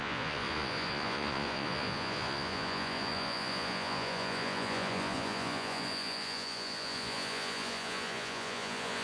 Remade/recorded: remade